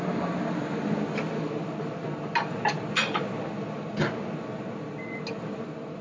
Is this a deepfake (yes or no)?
no